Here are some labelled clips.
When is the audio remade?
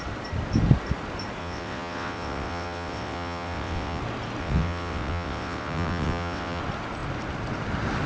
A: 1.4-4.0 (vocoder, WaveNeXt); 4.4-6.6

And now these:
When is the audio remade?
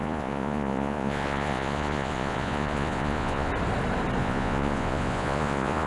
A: 0.0-3.5 (vocoder, Vocos); 4.2-5.9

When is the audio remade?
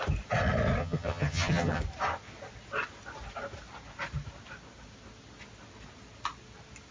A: 0.8-1.8 (vocoder, HiFi-GAN)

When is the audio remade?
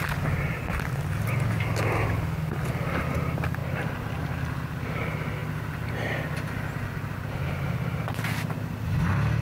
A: 5.4-7.3 (vocoder, BigVGAN v2)